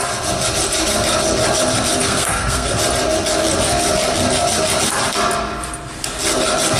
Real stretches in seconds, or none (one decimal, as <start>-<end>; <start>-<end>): 0.0-2.0; 2.8-6.8